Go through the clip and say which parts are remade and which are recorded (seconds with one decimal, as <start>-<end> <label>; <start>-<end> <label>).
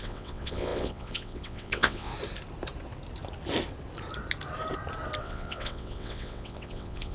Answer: 0.0-2.1 remade; 2.1-5.2 recorded; 5.2-7.1 remade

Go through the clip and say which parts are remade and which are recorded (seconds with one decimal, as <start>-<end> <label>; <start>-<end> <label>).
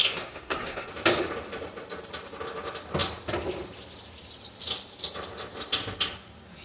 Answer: 0.0-0.9 remade; 0.9-6.6 recorded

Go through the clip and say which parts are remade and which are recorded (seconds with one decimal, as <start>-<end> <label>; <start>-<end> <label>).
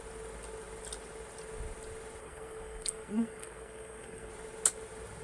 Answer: 0.0-2.2 recorded; 2.2-4.3 remade; 4.3-5.2 recorded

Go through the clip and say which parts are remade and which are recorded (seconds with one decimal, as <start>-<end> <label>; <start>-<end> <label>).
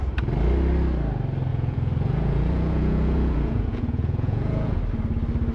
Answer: 0.0-1.5 recorded; 1.5-4.8 remade; 4.8-5.5 recorded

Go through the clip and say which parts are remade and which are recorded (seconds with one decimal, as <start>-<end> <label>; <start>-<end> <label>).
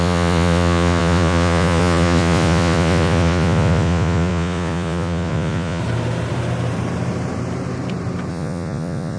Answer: 0.0-5.8 remade; 5.8-8.3 recorded; 8.3-9.2 remade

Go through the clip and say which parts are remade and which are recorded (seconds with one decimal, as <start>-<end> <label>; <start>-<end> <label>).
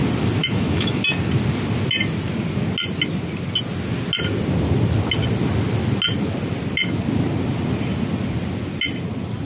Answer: 0.0-0.4 recorded; 0.4-1.0 remade; 1.0-9.5 recorded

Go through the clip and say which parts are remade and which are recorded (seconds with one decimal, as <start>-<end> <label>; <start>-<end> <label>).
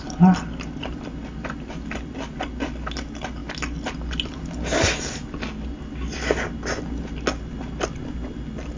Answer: 0.0-8.8 recorded